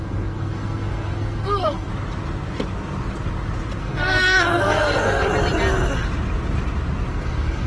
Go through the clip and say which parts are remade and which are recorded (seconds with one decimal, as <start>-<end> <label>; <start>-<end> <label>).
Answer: 0.0-1.9 remade; 1.9-3.8 recorded; 3.8-5.3 remade; 5.3-7.1 recorded; 7.1-7.7 remade